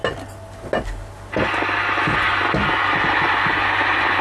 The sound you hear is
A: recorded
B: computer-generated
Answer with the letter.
A